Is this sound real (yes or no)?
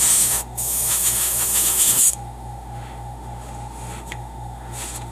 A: no